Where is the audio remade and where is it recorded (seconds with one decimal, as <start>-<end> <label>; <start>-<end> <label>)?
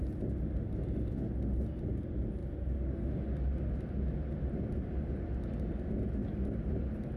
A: 0.0-7.2 recorded